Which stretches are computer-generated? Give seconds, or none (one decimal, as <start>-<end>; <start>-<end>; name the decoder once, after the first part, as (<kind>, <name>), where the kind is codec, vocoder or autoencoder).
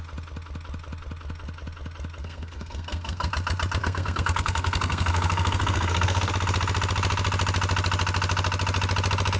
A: 2.2-3.3 (codec, SNAC); 3.8-6.3